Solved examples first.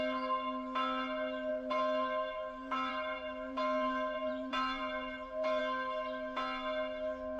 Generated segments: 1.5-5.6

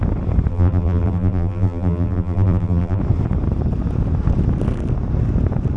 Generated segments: 0.5-3.0

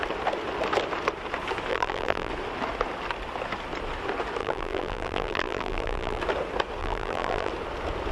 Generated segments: 1.7-2.3; 4.4-6.2; 6.8-7.5

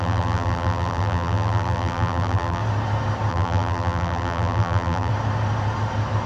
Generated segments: 0.0-2.6; 3.3-5.1

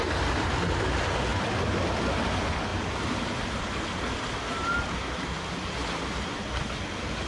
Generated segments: 1.3-2.1

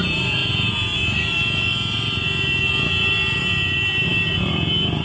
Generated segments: none

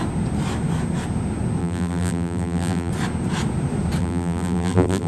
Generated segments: 1.6-2.9; 4.0-5.1

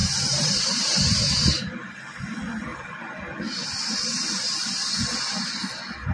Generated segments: 0.0-1.9